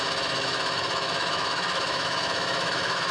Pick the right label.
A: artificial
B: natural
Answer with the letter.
A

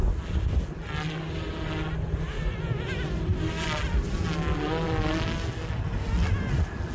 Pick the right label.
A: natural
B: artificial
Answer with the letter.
A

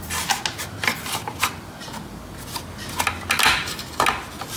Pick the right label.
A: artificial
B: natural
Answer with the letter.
B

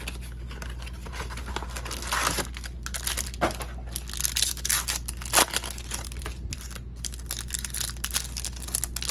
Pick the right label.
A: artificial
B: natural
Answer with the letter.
B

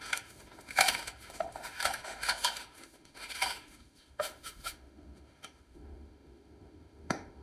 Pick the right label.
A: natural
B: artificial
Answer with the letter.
B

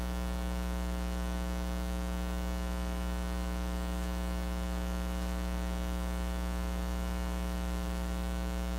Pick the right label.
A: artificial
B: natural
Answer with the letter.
A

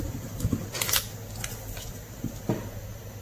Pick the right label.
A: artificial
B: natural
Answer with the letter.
B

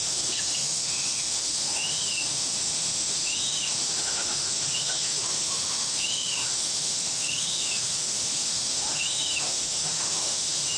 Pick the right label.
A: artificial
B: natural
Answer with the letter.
A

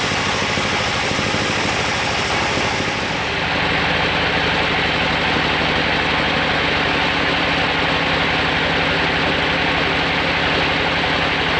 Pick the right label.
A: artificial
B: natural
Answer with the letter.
B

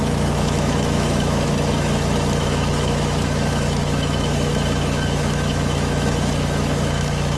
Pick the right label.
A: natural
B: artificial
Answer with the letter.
B